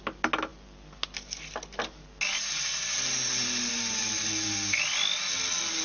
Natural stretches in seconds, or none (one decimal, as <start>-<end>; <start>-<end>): 0.0-5.8